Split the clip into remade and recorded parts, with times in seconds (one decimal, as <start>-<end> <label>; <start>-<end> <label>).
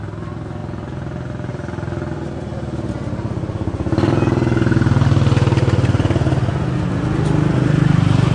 0.0-8.3 recorded